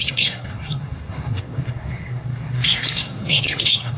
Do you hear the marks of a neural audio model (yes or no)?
yes